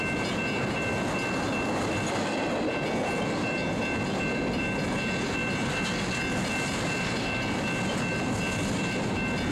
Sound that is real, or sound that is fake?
real